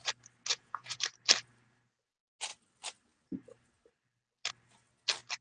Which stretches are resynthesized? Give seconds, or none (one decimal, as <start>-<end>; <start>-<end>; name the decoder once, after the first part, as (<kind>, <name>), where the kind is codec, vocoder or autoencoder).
0.5-1.0 (vocoder, Vocos)